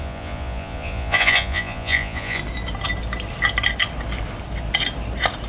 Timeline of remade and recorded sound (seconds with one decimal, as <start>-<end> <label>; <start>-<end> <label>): 0.0-2.4 remade; 2.4-5.5 recorded

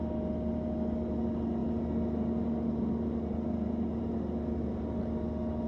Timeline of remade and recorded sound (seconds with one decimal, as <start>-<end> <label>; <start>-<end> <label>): 0.0-5.7 recorded